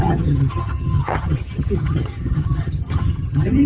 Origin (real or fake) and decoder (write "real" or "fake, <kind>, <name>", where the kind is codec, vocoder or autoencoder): fake, vocoder, HiFi-GAN